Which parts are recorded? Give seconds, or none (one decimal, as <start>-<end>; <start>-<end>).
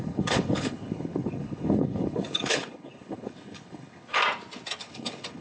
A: 4.2-4.8